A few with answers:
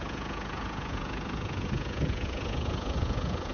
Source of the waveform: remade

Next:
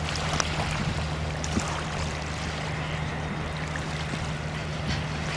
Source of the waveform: recorded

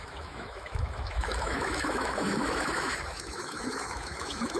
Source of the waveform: remade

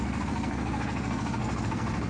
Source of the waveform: remade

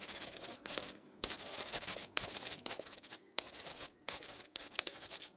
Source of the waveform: remade